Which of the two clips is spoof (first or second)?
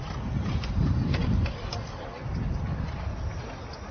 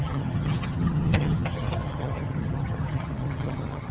second